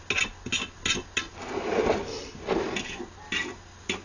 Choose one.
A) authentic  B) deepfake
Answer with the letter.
A